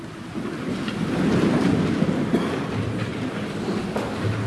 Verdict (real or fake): real